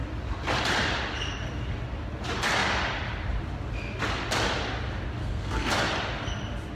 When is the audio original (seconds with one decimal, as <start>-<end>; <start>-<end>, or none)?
0.0-5.2; 5.7-6.7